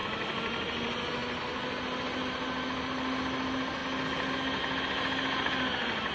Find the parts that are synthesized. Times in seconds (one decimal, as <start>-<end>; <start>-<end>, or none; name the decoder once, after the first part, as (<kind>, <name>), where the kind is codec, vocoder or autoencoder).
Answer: none